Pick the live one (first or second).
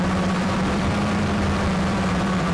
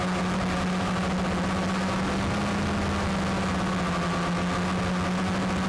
second